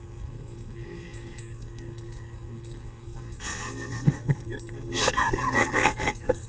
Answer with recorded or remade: remade